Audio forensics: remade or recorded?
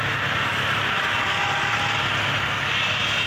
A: recorded